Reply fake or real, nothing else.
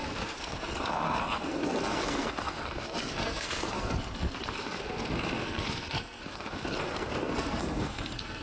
fake